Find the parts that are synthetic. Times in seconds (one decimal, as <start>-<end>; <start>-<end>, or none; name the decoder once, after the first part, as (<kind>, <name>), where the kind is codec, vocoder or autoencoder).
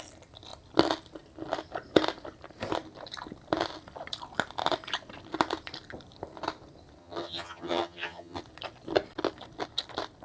7.0-8.4 (vocoder, HiFi-GAN)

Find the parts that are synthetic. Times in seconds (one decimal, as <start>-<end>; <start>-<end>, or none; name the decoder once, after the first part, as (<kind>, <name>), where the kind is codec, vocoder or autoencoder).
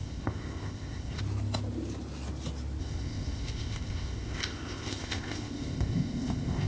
0.0-1.2 (codec, ZipCodec); 2.8-6.7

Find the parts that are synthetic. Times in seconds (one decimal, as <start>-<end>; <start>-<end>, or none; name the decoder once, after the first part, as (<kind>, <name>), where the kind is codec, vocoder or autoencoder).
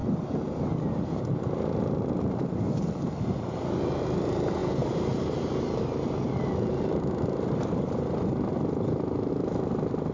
none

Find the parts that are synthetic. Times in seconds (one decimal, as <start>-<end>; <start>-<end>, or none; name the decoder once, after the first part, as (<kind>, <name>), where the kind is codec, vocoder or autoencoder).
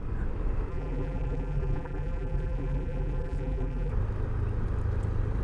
0.7-3.9 (vocoder, BigVGAN v2)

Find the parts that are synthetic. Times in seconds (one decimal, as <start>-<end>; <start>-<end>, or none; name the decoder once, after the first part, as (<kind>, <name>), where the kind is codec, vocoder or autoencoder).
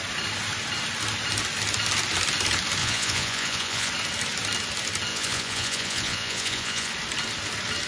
2.8-3.9 (vocoder, Vocos); 5.1-6.9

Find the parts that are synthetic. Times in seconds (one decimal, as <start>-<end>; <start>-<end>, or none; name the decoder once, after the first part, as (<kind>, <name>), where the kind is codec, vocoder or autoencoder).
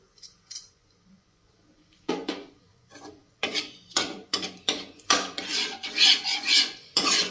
0.0-7.3 (vocoder, Vocos)